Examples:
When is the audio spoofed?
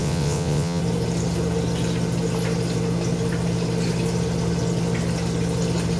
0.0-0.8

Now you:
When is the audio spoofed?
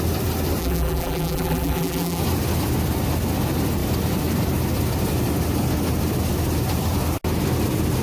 0.6-2.2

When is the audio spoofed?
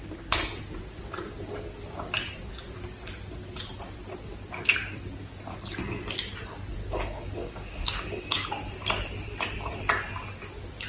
6.8-8.5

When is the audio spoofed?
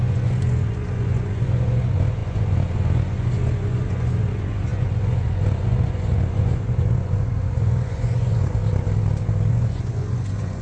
0.0-8.6; 9.5-10.6